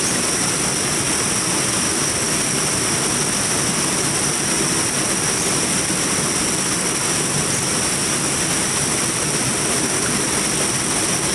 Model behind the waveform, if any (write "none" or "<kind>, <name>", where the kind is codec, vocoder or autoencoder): none